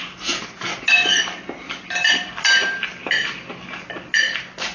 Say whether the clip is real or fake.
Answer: real